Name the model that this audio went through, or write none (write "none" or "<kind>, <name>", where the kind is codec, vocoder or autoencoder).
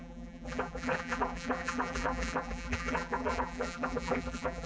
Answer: vocoder, BigVGAN v2